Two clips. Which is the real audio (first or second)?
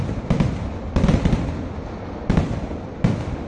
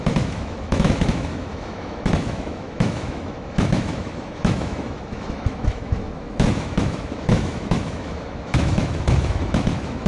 first